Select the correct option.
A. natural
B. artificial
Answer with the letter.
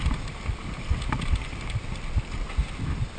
A